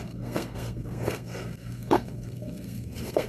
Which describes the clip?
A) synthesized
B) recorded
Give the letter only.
A